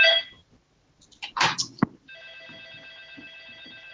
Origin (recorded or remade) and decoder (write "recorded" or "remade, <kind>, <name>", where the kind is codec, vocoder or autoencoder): recorded